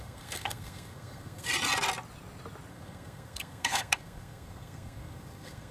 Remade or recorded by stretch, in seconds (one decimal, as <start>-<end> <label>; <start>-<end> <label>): 0.0-1.5 remade; 1.5-2.7 recorded; 2.7-5.7 remade